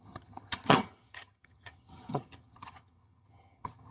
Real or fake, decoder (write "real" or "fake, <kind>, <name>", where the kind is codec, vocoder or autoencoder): fake, vocoder, HiFi-GAN